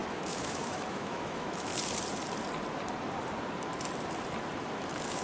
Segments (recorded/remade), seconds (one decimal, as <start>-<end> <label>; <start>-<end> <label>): 0.0-1.7 remade; 1.7-4.6 recorded; 4.6-5.2 remade